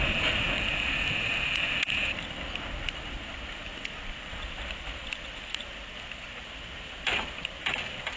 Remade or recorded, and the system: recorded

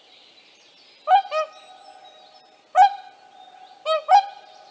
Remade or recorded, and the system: recorded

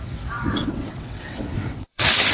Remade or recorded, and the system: remade, vocoder, WaveNeXt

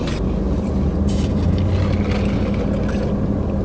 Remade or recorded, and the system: recorded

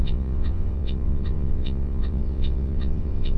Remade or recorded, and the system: remade, vocoder, WaveNeXt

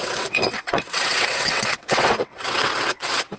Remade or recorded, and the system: remade, vocoder, WaveNeXt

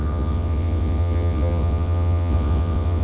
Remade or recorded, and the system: remade, vocoder, WaveNeXt